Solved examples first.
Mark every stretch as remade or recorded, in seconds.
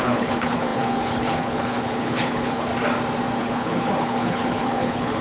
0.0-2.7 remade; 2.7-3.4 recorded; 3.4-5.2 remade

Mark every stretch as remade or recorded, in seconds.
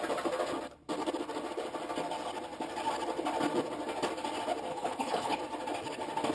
0.0-4.7 recorded; 4.7-5.4 remade; 5.4-6.3 recorded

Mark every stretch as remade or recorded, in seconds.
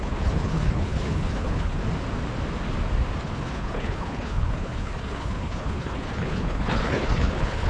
0.0-1.8 remade; 1.8-3.2 recorded; 3.2-7.7 remade